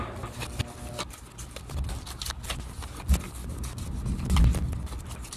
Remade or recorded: recorded